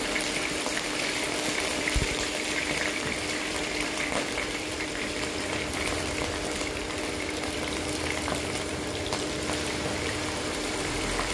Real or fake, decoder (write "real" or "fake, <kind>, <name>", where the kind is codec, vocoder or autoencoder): fake, vocoder, BigVGAN v2